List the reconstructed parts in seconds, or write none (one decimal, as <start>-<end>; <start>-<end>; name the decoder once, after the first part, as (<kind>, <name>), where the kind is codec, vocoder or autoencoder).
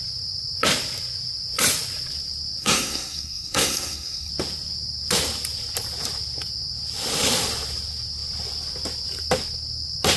2.6-4.3 (codec, SNAC)